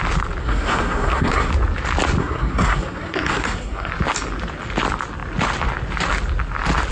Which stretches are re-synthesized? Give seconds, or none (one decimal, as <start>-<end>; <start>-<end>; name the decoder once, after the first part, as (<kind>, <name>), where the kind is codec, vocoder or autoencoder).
0.4-1.5 (codec, SNAC); 2.2-3.9